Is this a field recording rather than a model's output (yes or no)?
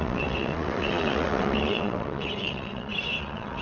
no